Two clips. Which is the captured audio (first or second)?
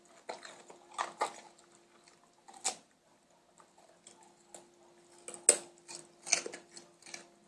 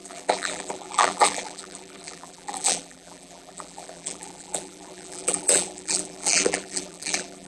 first